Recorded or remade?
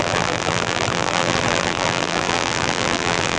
remade